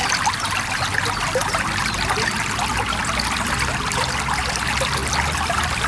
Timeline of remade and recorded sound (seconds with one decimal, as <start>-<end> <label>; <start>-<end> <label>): 0.0-5.9 recorded